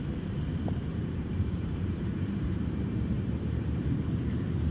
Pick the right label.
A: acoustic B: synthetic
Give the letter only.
B